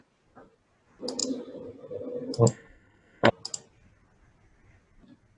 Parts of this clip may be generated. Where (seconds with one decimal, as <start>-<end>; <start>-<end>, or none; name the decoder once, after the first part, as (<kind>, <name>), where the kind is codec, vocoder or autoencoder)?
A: 2.5-3.3 (codec, SNAC)